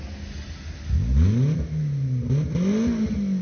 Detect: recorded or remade recorded